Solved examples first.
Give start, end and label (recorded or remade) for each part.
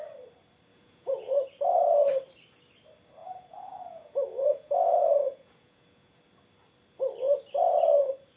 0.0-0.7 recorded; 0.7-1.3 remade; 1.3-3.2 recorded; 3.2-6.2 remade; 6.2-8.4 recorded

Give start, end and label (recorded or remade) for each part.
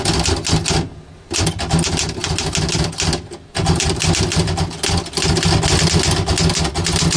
0.0-7.2 recorded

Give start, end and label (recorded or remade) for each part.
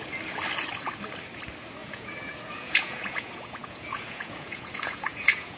0.0-1.8 recorded; 1.8-5.6 remade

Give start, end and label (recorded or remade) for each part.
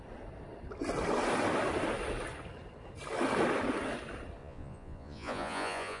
0.0-4.4 recorded; 4.4-6.0 remade